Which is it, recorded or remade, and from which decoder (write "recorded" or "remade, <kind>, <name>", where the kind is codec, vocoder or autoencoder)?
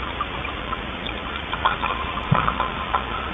remade, vocoder, Vocos